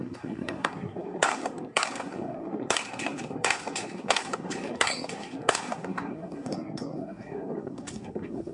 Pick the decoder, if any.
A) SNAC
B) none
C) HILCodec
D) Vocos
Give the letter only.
A